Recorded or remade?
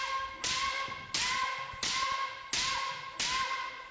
recorded